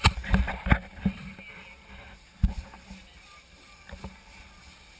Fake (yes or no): no